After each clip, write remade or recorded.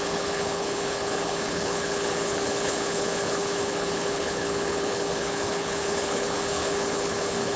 remade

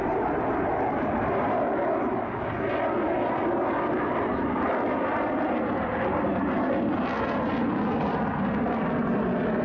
recorded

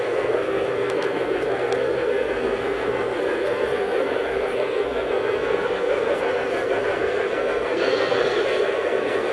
remade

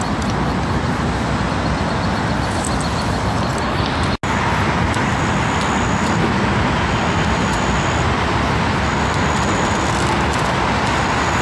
recorded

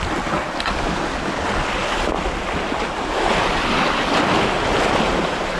recorded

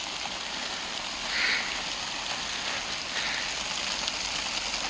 recorded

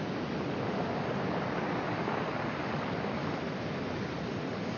recorded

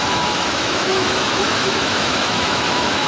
remade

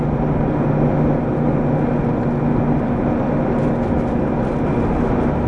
recorded